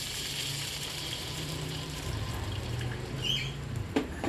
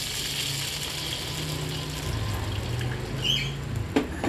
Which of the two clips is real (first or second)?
second